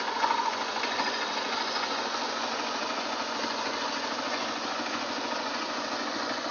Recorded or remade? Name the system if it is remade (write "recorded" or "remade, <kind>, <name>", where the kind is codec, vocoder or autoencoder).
remade, vocoder, Vocos